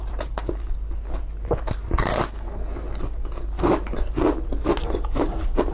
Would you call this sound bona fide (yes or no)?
yes